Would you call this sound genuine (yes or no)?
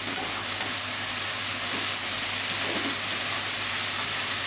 yes